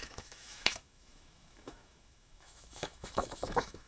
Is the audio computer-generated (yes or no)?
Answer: yes